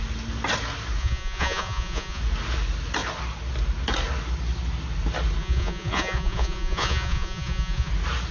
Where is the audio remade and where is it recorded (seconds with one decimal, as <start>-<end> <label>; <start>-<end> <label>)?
0.0-1.0 recorded; 1.0-2.2 remade; 2.2-5.4 recorded; 5.4-7.9 remade; 7.9-8.3 recorded